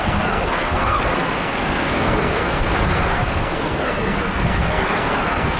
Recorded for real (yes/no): no